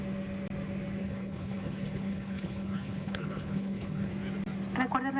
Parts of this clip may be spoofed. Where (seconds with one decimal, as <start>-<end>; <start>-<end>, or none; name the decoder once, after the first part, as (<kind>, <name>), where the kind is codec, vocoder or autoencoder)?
1.0-4.1 (codec, HILCodec)

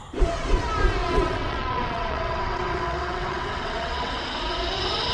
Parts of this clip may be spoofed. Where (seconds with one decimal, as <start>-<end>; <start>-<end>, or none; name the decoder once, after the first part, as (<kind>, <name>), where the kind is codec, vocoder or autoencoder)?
1.0-4.1 (vocoder, WaveNeXt)

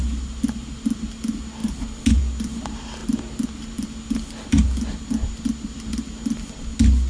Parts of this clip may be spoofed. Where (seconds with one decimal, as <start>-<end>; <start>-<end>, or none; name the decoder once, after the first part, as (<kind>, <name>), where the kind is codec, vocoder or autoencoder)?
none

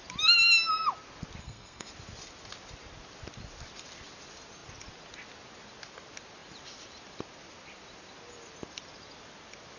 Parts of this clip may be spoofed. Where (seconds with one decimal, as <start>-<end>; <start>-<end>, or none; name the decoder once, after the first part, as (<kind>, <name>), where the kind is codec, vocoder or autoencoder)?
1.4-1.9 (codec, SNAC)

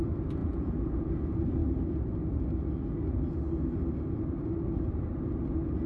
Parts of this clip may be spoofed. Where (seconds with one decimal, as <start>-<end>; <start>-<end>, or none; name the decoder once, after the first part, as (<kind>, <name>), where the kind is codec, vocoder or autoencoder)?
0.4-1.1 (vocoder, Vocos)

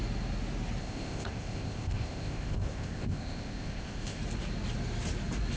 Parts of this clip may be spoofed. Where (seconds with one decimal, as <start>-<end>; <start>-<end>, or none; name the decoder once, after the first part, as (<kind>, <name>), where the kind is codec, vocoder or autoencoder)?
0.8-4.2 (codec, ZipCodec)

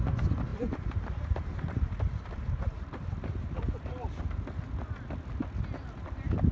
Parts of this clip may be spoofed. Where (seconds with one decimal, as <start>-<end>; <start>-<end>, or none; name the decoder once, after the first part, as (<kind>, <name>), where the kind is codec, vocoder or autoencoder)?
0.5-4.4 (vocoder, BigVGAN v2)